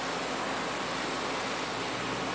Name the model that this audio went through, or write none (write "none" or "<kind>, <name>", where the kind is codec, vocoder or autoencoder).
none